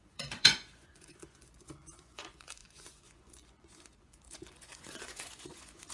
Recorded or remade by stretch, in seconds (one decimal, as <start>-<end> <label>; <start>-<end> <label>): 0.0-5.9 remade